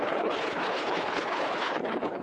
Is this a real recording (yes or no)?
no